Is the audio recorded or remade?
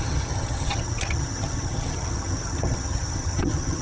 remade